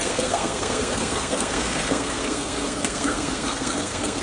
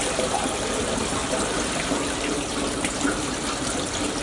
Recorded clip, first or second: second